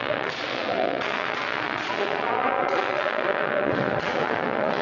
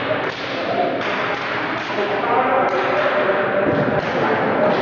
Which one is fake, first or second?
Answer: first